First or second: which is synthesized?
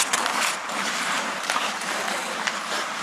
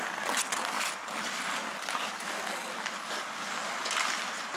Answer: first